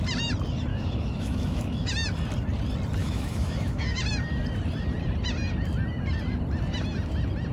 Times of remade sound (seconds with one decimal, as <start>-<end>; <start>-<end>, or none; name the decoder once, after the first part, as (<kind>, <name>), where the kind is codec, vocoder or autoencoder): 0.7-1.9 (autoencoder, DAC-VAE); 3.0-4.0